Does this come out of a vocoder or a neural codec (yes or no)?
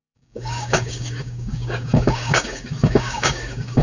yes